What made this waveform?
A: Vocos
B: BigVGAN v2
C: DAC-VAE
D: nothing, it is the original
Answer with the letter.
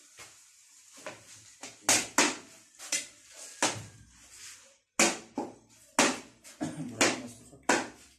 D